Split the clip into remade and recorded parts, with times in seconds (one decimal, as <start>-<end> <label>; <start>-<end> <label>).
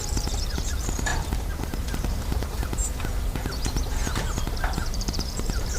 0.0-1.1 remade; 1.1-2.1 recorded; 2.1-2.8 remade; 2.8-4.4 recorded; 4.4-5.8 remade